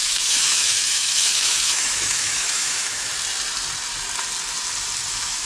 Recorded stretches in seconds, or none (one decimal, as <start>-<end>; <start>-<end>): 3.1-5.1